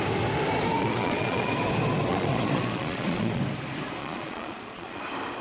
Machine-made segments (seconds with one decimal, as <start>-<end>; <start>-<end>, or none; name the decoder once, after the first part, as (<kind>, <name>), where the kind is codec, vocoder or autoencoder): 0.8-1.5 (vocoder, Vocos); 2.1-3.4; 4.0-5.0